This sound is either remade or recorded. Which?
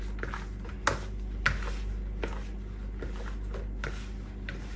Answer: recorded